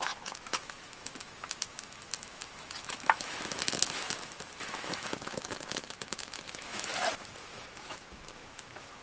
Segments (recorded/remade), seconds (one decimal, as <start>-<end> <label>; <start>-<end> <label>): 0.0-6.9 remade; 6.9-7.4 recorded; 7.4-9.0 remade